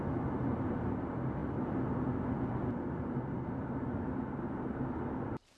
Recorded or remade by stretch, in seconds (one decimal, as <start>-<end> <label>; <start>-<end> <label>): 0.0-5.6 recorded